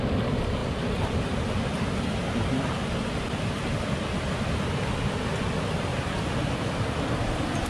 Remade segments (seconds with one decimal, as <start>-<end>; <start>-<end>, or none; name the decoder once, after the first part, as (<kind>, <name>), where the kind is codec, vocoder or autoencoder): 5.9-7.0 (vocoder, BigVGAN v2)